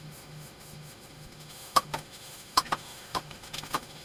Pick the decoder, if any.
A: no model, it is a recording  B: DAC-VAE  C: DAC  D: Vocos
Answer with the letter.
B